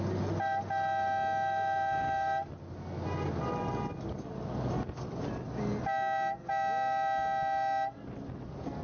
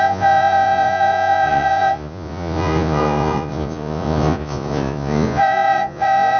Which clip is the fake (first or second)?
second